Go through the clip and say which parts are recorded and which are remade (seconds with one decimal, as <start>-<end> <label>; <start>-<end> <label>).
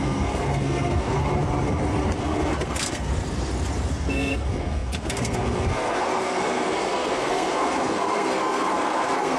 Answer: 0.0-1.2 remade; 1.2-2.2 recorded; 2.2-3.1 remade; 3.1-3.9 recorded; 3.9-9.4 remade